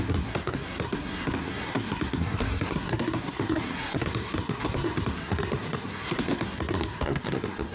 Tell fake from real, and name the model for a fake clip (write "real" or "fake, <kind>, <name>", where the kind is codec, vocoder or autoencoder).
fake, codec, SNAC